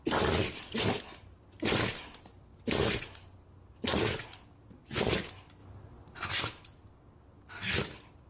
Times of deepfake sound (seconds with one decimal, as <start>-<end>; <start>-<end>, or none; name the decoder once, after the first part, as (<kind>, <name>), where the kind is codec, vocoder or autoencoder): none